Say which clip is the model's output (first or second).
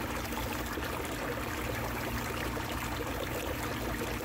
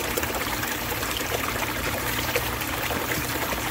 second